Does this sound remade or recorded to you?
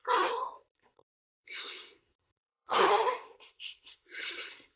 remade